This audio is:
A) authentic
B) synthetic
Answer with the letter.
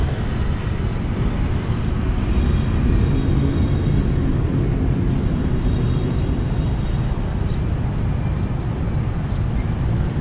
A